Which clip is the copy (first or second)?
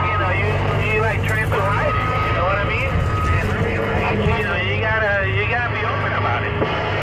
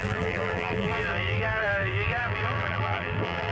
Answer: second